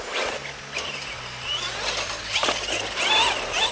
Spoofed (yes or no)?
no